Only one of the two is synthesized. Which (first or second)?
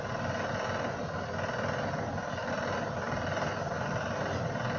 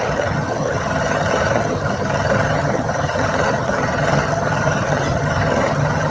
second